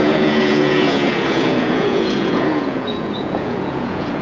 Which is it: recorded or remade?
remade